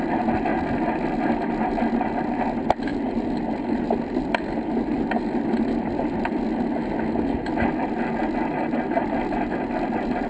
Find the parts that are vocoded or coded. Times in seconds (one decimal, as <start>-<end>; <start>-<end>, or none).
2.9-4.4; 4.9-6.4